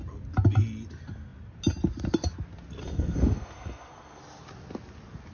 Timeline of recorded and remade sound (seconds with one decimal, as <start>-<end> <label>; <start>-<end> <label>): 0.0-2.8 recorded; 2.8-4.2 remade; 4.2-5.3 recorded